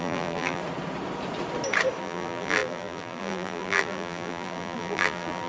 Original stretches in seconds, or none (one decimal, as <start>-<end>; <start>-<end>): 0.6-2.0